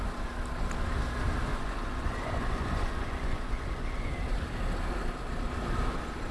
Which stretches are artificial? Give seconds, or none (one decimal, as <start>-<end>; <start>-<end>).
1.5-4.1